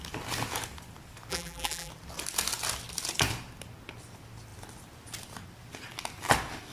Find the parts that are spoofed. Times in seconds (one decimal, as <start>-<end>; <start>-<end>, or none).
1.3-1.9